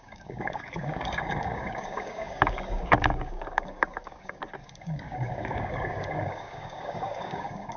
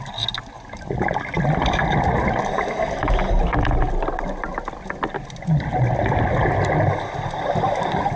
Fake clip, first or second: first